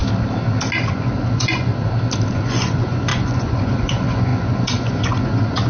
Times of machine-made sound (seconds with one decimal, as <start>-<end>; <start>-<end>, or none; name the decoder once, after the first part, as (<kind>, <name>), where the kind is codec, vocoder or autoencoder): 0.9-1.7 (vocoder, Vocos); 2.3-5.7